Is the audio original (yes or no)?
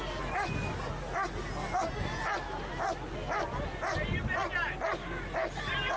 yes